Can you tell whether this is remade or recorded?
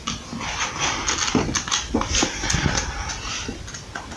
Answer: recorded